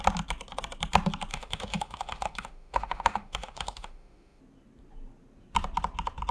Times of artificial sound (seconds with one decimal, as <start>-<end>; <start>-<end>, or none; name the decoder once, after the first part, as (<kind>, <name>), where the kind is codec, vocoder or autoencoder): 1.3-4.4 (autoencoder, DAC-VAE)